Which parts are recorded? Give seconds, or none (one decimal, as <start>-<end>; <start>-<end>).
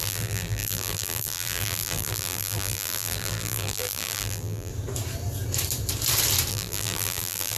4.7-6.5